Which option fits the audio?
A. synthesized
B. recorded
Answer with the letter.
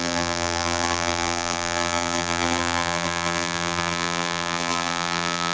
A